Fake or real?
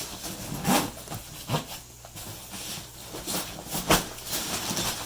real